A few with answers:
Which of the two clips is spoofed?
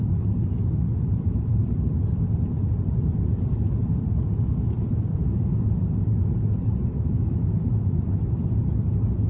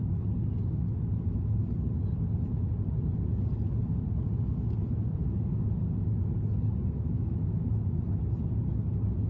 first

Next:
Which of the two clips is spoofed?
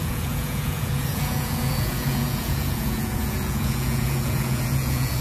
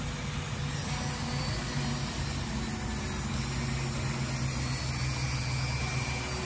first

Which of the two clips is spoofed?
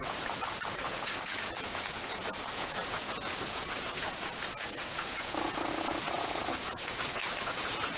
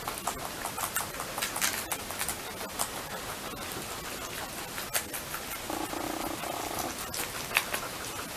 first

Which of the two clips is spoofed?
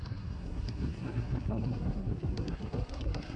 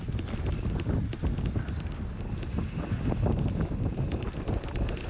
first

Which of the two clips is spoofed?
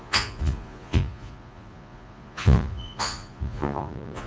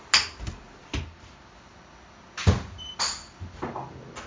first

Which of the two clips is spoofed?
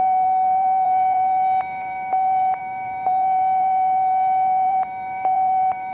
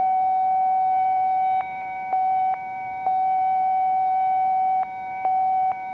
first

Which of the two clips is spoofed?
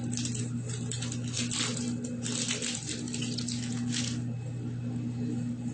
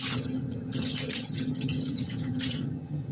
second